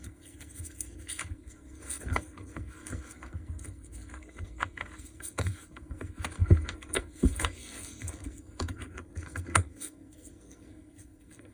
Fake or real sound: fake